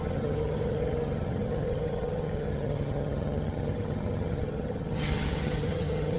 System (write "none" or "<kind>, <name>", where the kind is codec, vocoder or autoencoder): vocoder, HiFi-GAN